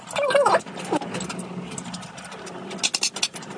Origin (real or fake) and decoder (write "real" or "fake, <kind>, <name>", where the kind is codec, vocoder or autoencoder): real